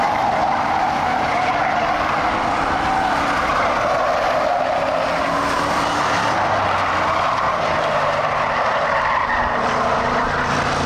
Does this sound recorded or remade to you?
recorded